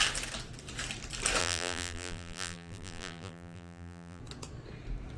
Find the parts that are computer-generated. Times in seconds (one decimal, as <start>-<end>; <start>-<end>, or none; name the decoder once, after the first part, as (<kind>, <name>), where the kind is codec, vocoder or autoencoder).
1.4-4.2 (vocoder, BigVGAN v2)